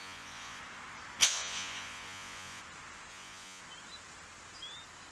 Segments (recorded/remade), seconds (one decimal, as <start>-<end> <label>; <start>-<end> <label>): 0.0-0.6 remade; 0.6-1.2 recorded; 1.2-2.6 remade; 2.6-3.1 recorded; 3.1-3.6 remade; 3.6-5.1 recorded